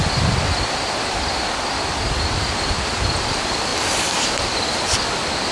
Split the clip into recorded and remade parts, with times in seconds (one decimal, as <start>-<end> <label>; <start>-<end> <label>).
0.0-5.5 remade